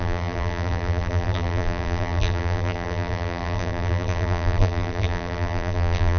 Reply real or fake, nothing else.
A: fake